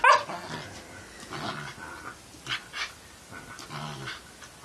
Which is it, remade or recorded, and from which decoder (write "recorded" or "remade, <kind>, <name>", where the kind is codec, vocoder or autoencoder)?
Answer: recorded